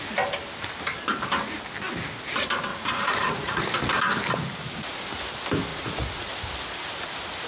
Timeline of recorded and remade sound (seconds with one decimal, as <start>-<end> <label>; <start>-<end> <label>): 0.0-2.7 recorded; 2.7-3.6 remade; 3.6-5.7 recorded; 5.7-6.3 remade; 6.3-7.5 recorded